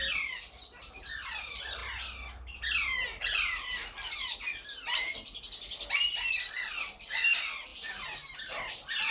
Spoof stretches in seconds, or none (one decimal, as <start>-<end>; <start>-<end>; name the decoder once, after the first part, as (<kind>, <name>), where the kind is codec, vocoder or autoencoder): none